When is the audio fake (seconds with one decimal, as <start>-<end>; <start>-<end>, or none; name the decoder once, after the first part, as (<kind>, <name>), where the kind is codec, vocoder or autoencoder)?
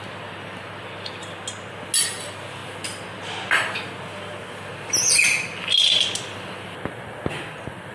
none